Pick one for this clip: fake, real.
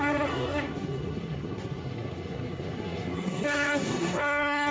fake